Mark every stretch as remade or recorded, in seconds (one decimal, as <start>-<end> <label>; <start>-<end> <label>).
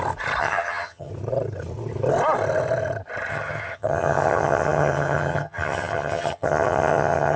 0.0-0.4 recorded; 0.4-1.1 remade; 1.1-3.3 recorded; 3.3-7.4 remade